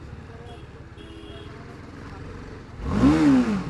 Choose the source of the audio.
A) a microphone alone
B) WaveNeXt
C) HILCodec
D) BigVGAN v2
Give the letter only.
A